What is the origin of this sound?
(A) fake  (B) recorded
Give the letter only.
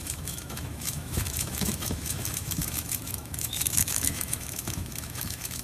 A